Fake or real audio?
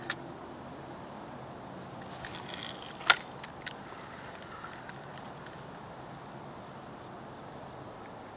real